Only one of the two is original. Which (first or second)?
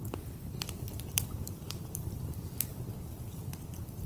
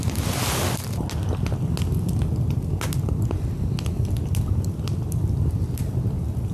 second